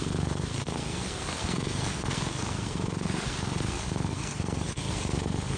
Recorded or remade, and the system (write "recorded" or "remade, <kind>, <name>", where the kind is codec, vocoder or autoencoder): remade, codec, SNAC